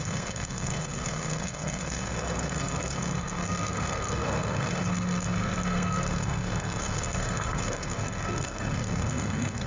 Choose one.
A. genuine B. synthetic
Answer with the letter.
B